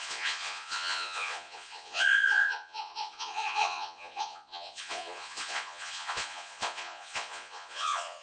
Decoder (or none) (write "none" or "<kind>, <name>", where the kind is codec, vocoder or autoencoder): vocoder, Vocos